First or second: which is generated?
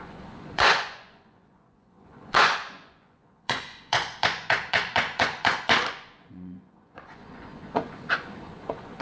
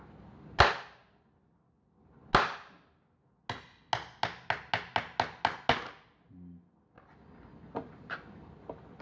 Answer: first